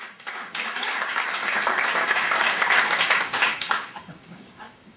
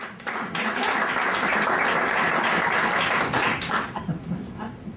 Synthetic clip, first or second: first